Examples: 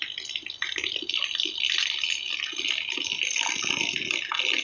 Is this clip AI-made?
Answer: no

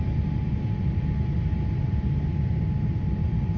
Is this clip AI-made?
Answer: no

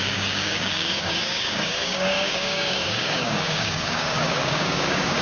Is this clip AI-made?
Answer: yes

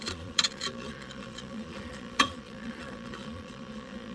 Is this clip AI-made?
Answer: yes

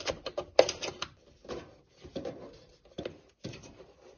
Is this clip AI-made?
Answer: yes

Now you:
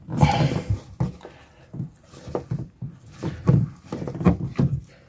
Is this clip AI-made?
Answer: no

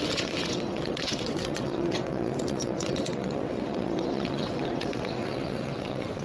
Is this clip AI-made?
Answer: yes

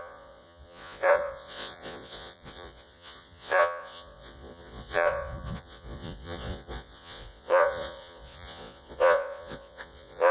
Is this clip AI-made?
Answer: yes